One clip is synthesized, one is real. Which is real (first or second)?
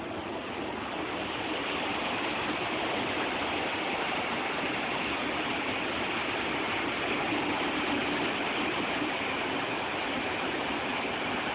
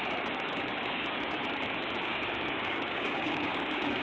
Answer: first